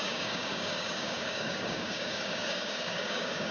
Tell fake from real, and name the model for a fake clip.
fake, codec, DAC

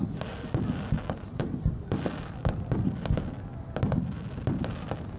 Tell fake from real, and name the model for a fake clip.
real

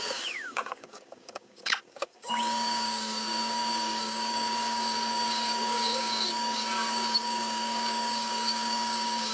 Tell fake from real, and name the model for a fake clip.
fake, codec, DAC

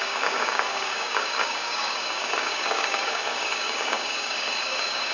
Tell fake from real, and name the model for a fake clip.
fake, codec, DAC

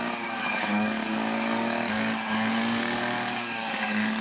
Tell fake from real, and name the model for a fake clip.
fake, codec, DAC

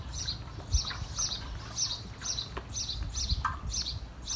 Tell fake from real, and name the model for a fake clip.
real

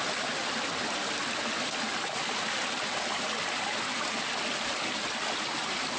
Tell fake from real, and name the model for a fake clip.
real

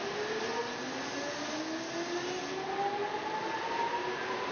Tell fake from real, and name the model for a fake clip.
real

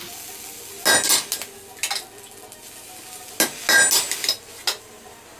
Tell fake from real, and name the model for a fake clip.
real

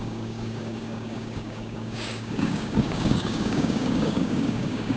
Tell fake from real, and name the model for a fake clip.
fake, codec, DAC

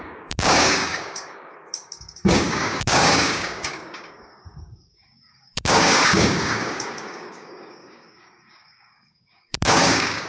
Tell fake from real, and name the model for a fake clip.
fake, codec, DAC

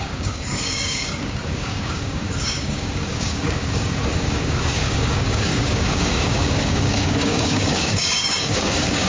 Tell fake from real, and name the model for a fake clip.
fake, codec, DAC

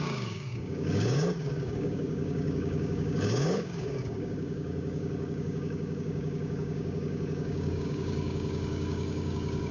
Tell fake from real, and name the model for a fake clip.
fake, codec, DAC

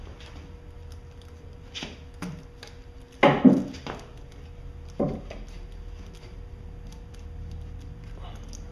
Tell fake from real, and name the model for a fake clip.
real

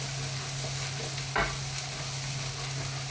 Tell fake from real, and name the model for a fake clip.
real